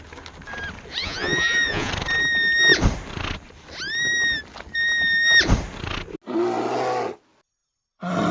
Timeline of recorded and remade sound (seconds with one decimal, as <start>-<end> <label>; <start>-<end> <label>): 0.0-1.0 recorded; 1.0-1.9 remade; 1.9-8.3 recorded